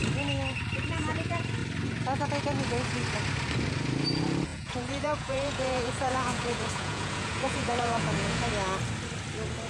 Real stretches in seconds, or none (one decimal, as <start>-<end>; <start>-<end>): 0.0-4.5; 8.5-9.7